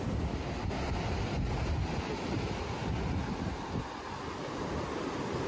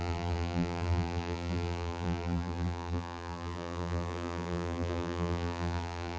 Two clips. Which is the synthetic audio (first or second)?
second